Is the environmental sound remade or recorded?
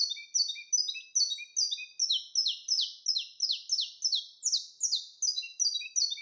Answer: recorded